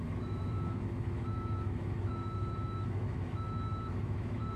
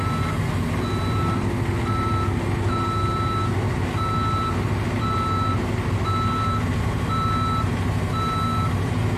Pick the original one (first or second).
second